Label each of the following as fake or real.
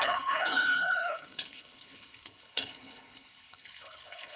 fake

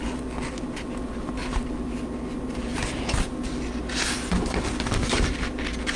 real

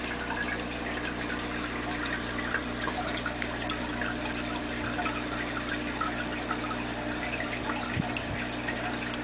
real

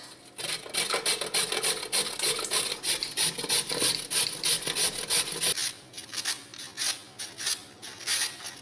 real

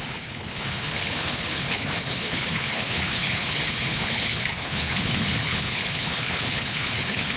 fake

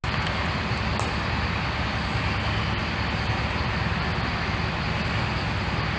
real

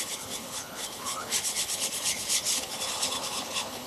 fake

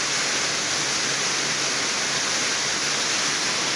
real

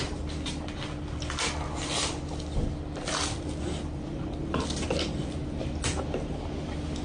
real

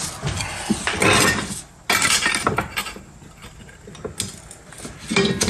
real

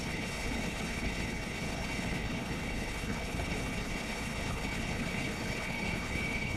fake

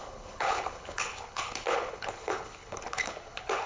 fake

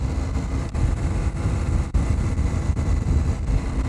real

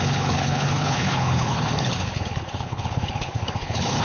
fake